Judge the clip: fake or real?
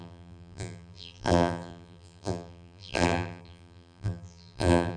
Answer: fake